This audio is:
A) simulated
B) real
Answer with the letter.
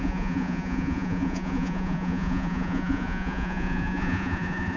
A